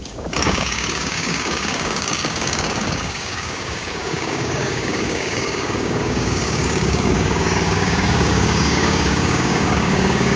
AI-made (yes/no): yes